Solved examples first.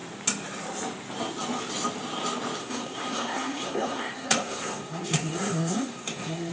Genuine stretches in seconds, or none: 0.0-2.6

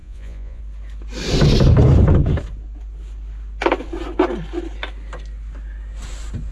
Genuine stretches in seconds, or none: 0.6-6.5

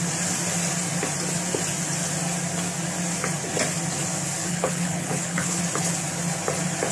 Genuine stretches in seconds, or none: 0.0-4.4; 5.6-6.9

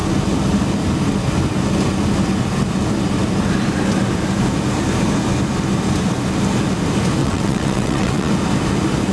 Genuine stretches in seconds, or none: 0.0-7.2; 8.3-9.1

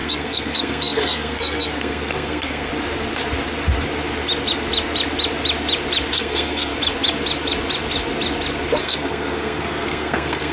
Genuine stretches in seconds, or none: 2.7-6.1; 6.7-8.8